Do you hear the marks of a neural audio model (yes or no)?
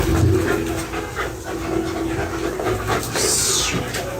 no